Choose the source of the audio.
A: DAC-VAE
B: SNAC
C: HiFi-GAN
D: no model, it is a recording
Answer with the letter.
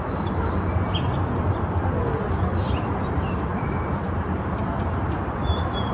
D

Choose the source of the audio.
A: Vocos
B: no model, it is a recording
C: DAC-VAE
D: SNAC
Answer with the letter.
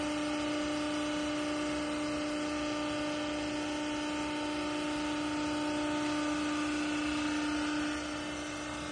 B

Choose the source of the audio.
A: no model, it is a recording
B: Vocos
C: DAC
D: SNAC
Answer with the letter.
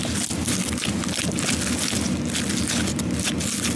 A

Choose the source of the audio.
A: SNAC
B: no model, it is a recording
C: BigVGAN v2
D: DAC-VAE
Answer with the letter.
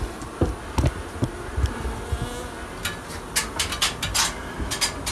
B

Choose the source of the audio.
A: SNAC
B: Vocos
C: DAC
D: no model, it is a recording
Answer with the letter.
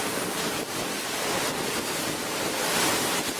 D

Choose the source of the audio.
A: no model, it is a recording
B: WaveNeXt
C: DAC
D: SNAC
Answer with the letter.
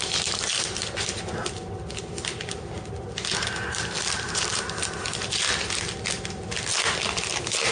A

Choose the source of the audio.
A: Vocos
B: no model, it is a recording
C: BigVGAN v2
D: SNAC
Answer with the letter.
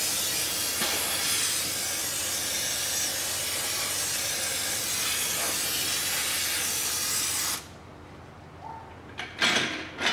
B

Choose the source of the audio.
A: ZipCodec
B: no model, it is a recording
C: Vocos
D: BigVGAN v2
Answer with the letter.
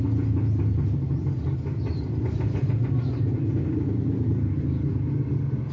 B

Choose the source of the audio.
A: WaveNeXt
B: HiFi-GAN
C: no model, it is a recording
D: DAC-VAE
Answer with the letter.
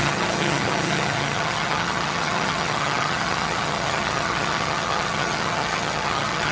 B